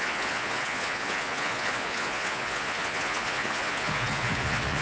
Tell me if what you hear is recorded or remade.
remade